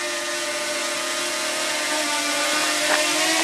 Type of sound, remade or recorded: recorded